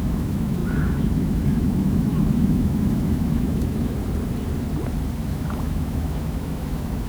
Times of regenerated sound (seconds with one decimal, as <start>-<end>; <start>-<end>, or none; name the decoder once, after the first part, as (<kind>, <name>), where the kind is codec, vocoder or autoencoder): 0.0-4.0 (autoencoder, DAC-VAE); 5.2-7.1